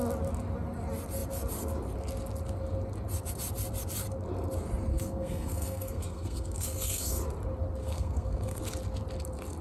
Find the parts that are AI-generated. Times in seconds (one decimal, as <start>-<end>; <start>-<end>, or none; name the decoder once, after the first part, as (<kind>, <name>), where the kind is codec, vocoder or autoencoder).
4.9-7.2 (codec, SNAC); 7.8-8.6